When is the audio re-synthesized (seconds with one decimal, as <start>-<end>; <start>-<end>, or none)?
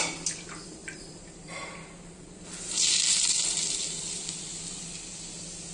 0.8-4.2